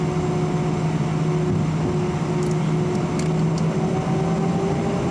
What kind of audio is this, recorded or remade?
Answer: recorded